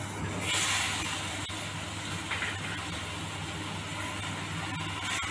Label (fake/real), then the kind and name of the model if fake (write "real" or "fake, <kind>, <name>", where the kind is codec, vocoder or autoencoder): real